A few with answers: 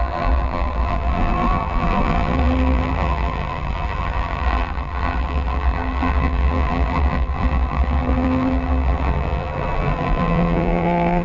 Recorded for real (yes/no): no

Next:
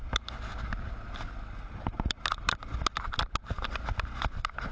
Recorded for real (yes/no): yes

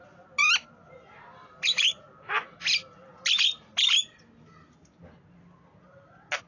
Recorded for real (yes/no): yes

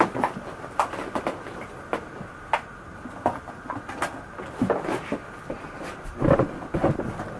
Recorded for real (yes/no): yes